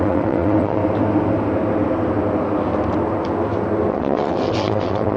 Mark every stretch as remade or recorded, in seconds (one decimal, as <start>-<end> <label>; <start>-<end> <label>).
0.0-0.8 remade; 0.8-3.9 recorded; 3.9-5.2 remade